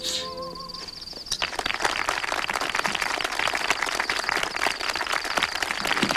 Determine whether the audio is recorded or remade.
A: recorded